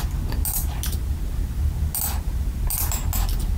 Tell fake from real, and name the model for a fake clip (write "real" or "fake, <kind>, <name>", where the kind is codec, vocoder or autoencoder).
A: real